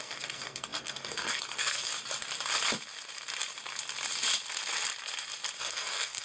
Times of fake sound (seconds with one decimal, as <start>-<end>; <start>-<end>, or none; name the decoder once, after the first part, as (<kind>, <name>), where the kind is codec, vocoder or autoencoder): 0.0-1.9 (codec, SNAC); 5.6-6.2